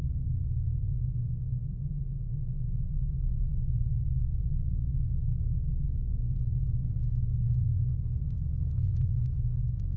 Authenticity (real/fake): fake